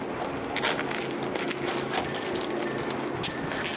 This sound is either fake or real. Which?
real